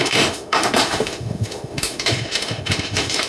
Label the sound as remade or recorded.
remade